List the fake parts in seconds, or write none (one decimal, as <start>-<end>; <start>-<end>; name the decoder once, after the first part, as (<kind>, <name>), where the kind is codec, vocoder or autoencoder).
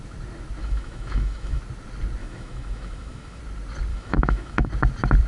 0.6-1.6 (autoencoder, DAC-VAE); 2.2-3.4; 3.9-4.7